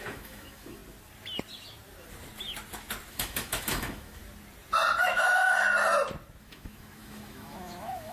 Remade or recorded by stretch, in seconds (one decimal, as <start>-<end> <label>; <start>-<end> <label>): 0.0-0.8 remade; 0.8-3.1 recorded; 3.1-4.2 remade; 4.2-5.0 recorded; 5.0-5.4 remade; 5.4-6.4 recorded; 6.4-8.1 remade